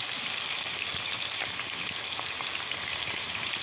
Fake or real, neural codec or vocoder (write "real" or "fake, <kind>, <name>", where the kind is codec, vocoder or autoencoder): real